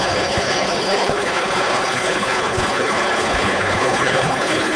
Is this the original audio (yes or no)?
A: no